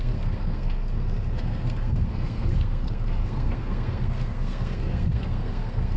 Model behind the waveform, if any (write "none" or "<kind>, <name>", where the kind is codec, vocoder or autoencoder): codec, SNAC